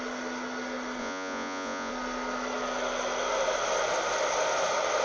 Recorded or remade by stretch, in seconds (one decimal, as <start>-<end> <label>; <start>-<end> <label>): 0.0-1.0 recorded; 1.0-1.9 remade; 1.9-5.0 recorded